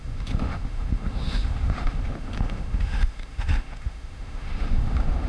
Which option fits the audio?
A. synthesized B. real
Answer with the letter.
A